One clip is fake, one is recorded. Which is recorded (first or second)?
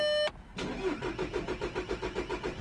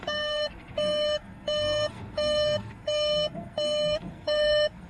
first